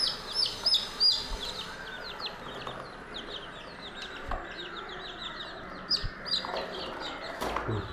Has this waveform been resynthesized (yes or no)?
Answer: no